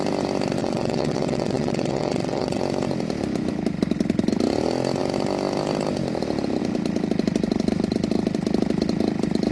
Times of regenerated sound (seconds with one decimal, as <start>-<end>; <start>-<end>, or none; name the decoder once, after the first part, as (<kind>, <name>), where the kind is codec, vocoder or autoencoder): 0.6-2.6 (vocoder, WaveNeXt)